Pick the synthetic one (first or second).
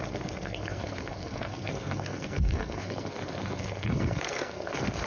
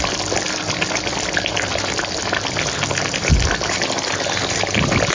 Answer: first